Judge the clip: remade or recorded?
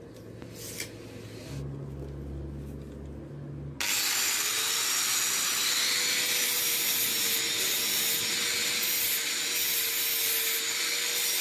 recorded